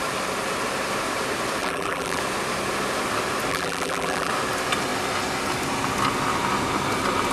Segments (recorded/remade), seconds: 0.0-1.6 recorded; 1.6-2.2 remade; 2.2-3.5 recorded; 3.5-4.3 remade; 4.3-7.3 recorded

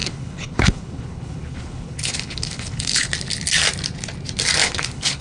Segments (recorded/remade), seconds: 0.0-3.1 remade; 3.1-4.6 recorded; 4.6-5.2 remade

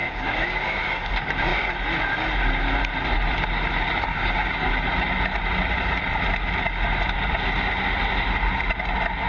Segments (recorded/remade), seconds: 0.0-1.1 remade; 1.1-4.1 recorded; 4.1-4.7 remade; 4.7-9.3 recorded

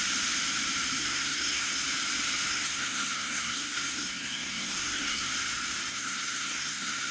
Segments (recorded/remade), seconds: 0.0-1.0 recorded; 1.0-1.8 remade; 1.8-2.5 recorded; 2.5-5.3 remade; 5.3-5.9 recorded; 5.9-7.1 remade

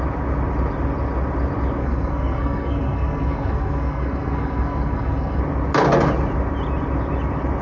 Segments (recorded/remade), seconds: 0.0-1.8 recorded; 1.8-5.4 remade; 5.4-7.6 recorded